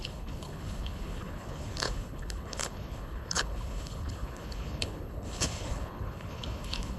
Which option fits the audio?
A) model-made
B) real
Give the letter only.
A